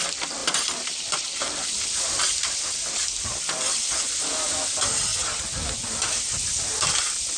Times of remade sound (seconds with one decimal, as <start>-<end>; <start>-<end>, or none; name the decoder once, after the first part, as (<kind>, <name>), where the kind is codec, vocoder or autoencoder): 0.4-4.0 (vocoder, BigVGAN v2)